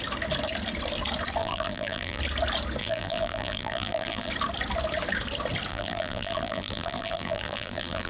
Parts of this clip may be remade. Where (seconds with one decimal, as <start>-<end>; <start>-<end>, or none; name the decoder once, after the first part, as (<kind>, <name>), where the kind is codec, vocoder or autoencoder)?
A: 1.4-2.2 (vocoder, BigVGAN v2); 2.8-4.3; 5.7-8.1